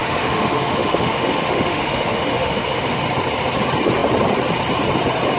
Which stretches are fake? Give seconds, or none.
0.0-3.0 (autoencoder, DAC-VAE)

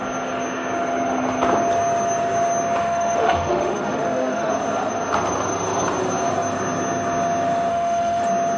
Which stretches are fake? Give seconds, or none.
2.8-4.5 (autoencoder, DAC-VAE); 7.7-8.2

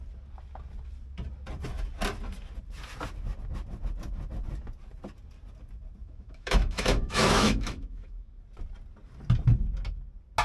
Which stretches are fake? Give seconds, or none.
6.0-8.3 (autoencoder, DAC-VAE)